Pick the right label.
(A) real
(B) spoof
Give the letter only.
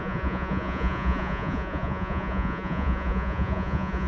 B